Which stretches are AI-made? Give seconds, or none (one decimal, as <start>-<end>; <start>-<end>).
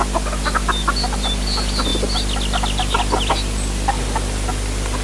none